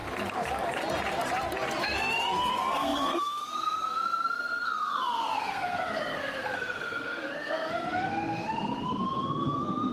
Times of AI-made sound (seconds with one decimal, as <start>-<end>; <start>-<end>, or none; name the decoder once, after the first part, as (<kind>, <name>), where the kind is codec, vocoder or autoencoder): 1.8-9.9 (codec, SNAC)